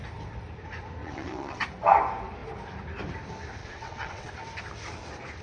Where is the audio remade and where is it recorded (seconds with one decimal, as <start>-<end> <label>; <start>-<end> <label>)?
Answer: 0.0-1.0 recorded; 1.0-1.6 remade; 1.6-3.6 recorded; 3.6-4.3 remade; 4.3-5.4 recorded